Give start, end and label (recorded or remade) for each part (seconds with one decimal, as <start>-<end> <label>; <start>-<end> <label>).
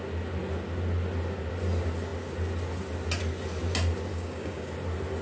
0.0-4.1 recorded; 4.1-4.7 remade; 4.7-5.2 recorded